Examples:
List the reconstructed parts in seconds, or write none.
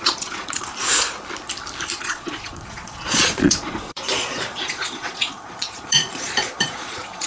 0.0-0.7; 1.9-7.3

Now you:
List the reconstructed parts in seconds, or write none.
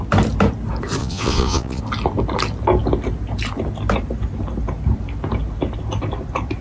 1.0-1.8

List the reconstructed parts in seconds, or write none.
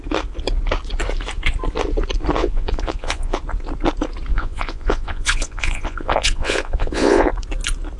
2.4-3.4; 4.3-7.3